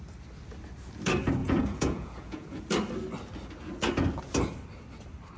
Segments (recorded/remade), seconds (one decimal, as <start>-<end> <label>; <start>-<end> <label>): 0.0-1.4 recorded; 1.4-2.6 remade; 2.6-5.4 recorded